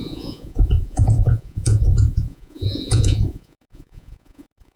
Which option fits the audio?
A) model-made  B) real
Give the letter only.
A